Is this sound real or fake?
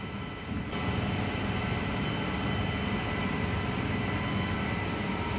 real